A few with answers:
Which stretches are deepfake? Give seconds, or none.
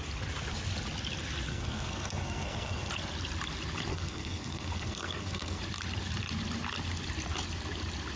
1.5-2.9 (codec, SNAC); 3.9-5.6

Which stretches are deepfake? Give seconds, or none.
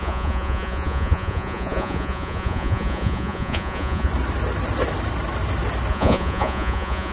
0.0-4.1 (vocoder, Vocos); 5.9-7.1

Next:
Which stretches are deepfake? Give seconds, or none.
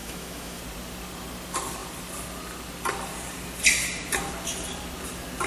0.0-0.6 (autoencoder, DAC-VAE)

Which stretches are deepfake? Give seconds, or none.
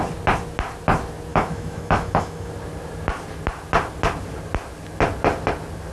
1.3-2.5 (autoencoder, DAC-VAE)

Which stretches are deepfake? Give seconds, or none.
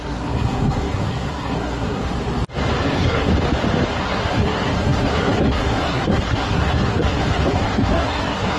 0.0-2.1 (codec, SNAC); 2.8-3.3; 4.0-8.6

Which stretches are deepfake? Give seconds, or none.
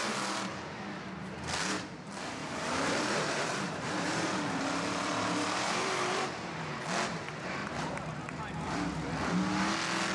2.4-6.8 (vocoder, BigVGAN v2); 7.6-8.4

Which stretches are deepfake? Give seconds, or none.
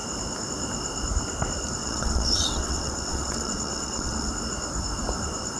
1.8-4.3 (vocoder, WaveNeXt)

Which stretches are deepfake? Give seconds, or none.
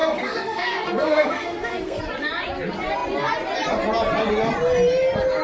0.0-2.0 (codec, SNAC)